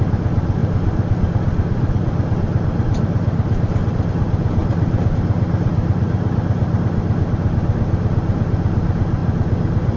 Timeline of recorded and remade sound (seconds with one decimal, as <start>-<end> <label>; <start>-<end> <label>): 0.0-0.6 recorded; 0.6-4.1 remade; 4.1-4.6 recorded; 4.6-7.2 remade; 7.2-10.0 recorded